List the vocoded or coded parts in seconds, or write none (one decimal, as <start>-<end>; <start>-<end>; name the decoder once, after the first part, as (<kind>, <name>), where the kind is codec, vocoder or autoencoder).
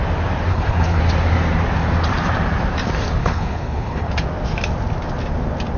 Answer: 0.5-1.0 (codec, HILCodec); 3.2-4.1